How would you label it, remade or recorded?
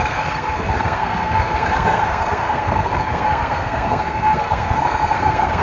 remade